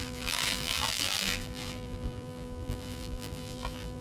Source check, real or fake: fake